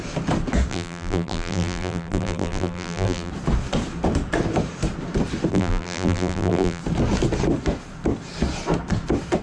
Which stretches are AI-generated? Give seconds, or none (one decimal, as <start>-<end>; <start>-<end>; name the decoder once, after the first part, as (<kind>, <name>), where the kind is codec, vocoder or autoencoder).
0.7-3.3 (vocoder, BigVGAN v2); 5.5-6.8